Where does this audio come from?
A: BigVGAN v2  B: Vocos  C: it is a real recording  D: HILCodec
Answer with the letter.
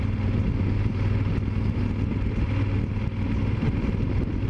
C